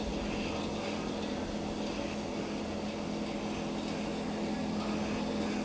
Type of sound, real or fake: real